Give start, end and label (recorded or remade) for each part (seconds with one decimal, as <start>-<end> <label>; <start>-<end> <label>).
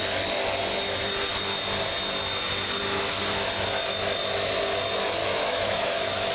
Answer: 0.0-5.2 recorded; 5.2-6.3 remade